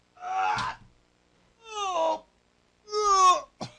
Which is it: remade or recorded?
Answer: recorded